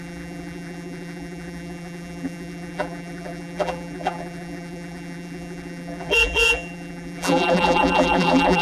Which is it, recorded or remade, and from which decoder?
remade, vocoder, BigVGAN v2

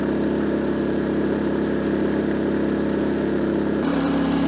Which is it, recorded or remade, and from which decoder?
remade, vocoder, BigVGAN v2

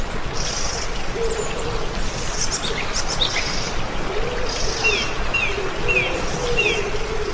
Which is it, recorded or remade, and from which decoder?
recorded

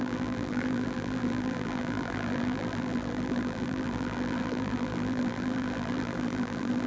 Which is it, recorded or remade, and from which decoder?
remade, vocoder, BigVGAN v2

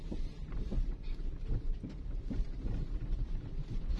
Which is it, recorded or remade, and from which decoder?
remade, vocoder, BigVGAN v2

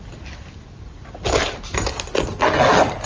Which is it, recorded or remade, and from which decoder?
recorded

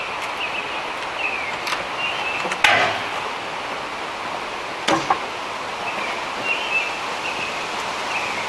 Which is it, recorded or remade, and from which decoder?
recorded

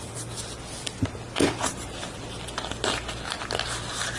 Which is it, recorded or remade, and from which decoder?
recorded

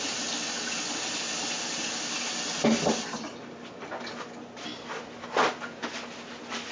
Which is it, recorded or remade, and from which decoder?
recorded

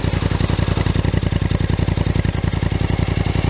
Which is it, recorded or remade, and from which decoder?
recorded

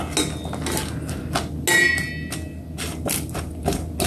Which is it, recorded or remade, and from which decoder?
recorded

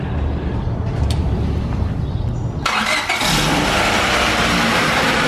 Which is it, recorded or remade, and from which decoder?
recorded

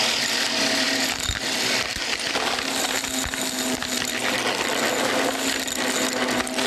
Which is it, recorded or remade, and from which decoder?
recorded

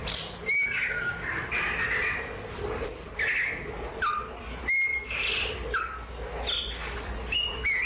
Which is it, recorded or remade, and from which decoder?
recorded